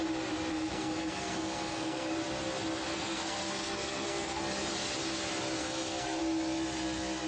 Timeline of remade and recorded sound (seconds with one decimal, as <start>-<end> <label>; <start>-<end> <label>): 0.0-0.5 recorded; 0.5-2.1 remade; 2.1-2.9 recorded; 2.9-4.4 remade; 4.4-5.6 recorded; 5.6-6.2 remade; 6.2-7.3 recorded